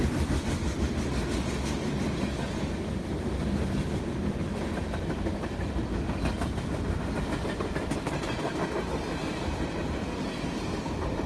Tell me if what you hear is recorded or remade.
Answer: recorded